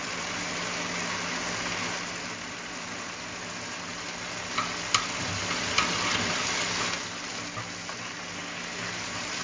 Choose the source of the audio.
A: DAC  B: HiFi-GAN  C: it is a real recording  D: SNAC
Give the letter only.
C